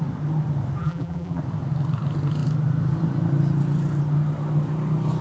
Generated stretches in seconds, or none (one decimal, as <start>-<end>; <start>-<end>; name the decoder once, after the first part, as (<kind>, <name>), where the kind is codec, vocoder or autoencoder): 0.8-1.4 (vocoder, BigVGAN v2)